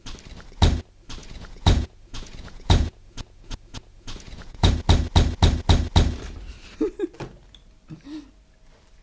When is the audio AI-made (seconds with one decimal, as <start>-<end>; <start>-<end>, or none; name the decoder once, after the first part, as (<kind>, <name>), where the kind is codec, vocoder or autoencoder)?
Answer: 1.2-4.7 (vocoder, Vocos)

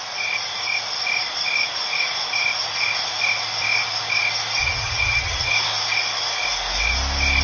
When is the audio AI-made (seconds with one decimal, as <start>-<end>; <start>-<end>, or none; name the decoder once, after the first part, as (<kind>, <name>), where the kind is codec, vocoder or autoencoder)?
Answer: 4.6-5.5 (vocoder, HiFi-GAN)

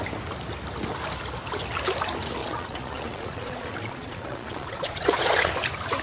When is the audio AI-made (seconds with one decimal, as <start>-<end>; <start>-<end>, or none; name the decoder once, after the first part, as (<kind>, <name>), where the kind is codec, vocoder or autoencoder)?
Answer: 2.4-5.5 (vocoder, Vocos)